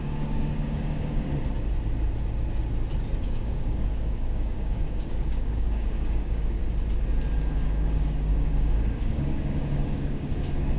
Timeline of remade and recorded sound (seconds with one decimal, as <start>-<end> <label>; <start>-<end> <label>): 0.0-1.3 remade; 1.3-3.2 recorded; 3.2-6.6 remade; 6.6-7.5 recorded; 7.5-10.8 remade